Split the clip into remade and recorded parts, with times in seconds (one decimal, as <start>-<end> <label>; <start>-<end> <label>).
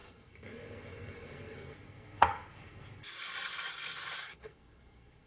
0.0-3.1 remade; 3.1-4.2 recorded; 4.2-5.3 remade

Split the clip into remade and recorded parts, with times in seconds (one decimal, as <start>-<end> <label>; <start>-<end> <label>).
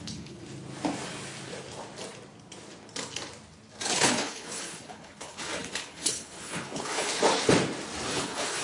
0.0-0.4 remade; 0.4-3.9 recorded; 3.9-7.2 remade; 7.2-8.1 recorded; 8.1-8.6 remade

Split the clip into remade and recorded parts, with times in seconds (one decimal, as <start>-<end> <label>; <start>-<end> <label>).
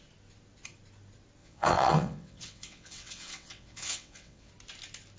0.0-1.4 recorded; 1.4-4.5 remade; 4.5-5.2 recorded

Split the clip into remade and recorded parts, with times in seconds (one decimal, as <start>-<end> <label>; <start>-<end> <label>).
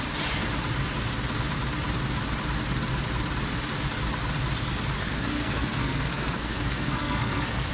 0.0-5.0 recorded; 5.0-7.7 remade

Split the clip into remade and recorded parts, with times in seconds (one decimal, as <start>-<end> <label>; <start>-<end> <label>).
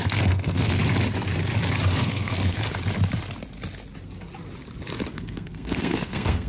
0.0-0.8 remade; 0.8-2.0 recorded; 2.0-2.6 remade; 2.6-5.1 recorded; 5.1-6.5 remade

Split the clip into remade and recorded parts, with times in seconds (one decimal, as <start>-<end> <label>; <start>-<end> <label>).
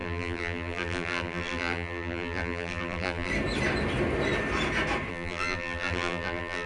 0.0-3.3 remade; 3.3-5.1 recorded; 5.1-6.7 remade